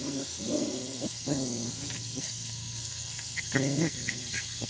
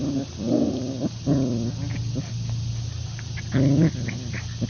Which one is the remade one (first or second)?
first